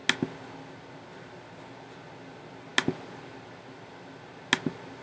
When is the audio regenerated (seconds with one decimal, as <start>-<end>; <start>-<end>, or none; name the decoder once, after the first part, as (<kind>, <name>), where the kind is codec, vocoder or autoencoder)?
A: none